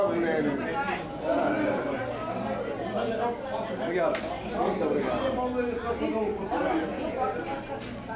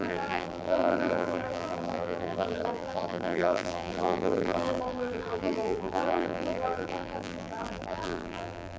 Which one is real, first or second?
first